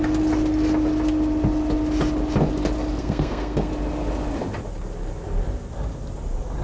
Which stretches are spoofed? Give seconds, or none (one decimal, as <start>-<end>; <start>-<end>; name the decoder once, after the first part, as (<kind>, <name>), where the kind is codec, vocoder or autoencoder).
3.0-3.7 (codec, SNAC)

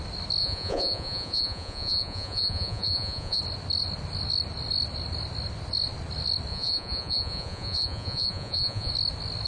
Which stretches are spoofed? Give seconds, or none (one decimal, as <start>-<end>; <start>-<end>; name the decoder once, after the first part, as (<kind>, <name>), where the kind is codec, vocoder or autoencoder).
0.4-3.4 (vocoder, Vocos); 6.5-8.9

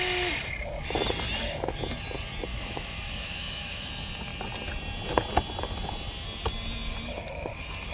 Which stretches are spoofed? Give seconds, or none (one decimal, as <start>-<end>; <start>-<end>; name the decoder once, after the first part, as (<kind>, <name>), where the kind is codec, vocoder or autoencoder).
2.5-3.9 (autoencoder, DAC-VAE)